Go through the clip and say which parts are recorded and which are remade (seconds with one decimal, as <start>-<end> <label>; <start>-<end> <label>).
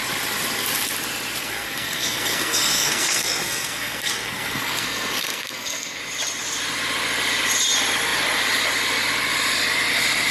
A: 0.0-1.4 recorded; 1.4-6.0 remade; 6.0-10.3 recorded